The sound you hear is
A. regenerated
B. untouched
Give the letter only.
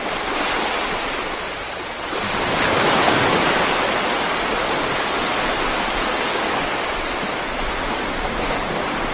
B